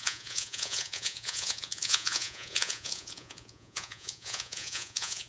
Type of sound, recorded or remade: remade